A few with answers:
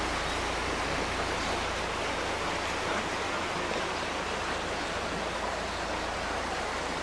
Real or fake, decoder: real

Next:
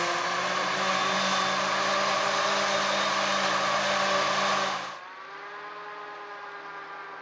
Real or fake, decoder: real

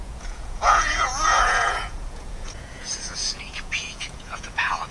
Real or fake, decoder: fake, vocoder, Vocos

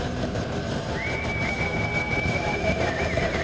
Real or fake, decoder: fake, vocoder, BigVGAN v2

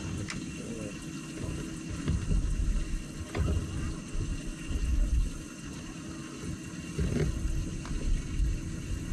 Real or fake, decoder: real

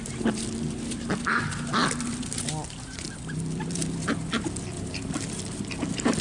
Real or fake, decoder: fake, vocoder, BigVGAN v2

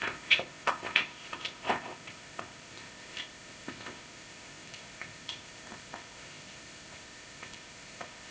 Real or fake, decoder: fake, codec, ZipCodec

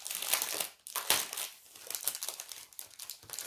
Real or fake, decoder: real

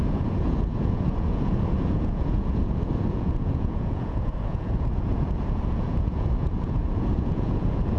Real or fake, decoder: fake, vocoder, Vocos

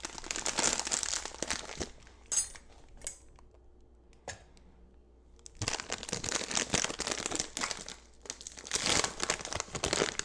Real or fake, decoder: real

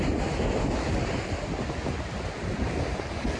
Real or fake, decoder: real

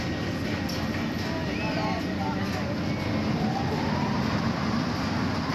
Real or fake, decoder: real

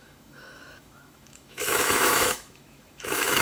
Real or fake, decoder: fake, autoencoder, DAC-VAE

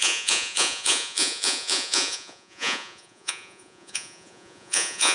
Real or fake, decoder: fake, vocoder, Vocos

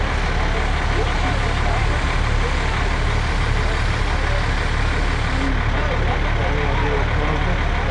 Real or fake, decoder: real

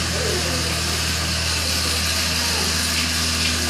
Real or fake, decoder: real